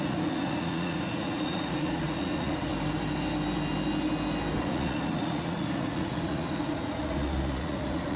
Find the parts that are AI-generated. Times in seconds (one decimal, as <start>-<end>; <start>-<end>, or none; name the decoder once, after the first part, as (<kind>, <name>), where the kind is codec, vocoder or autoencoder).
0.0-2.7 (vocoder, Vocos); 4.6-8.2